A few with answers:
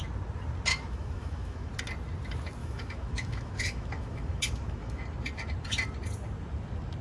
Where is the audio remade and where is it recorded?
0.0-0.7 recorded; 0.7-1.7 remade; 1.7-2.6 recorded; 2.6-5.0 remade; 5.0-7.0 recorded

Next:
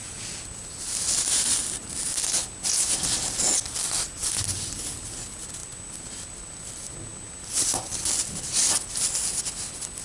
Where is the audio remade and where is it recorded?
0.0-1.3 remade; 1.3-5.6 recorded; 5.6-8.9 remade; 8.9-10.0 recorded

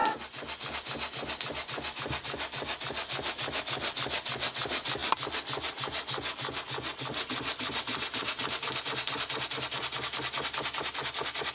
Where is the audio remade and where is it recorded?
0.0-11.5 recorded

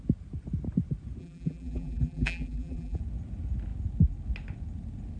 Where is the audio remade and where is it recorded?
0.0-1.2 recorded; 1.2-3.0 remade; 3.0-5.2 recorded

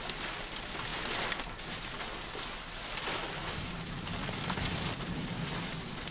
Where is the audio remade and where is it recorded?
0.0-6.1 recorded

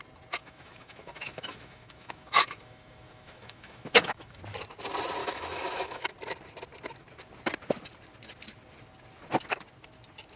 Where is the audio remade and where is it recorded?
0.0-0.4 recorded; 0.4-4.4 remade; 4.4-5.2 recorded; 5.2-6.1 remade; 6.1-10.4 recorded